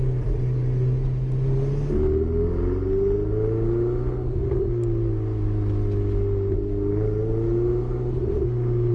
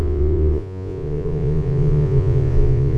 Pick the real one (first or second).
first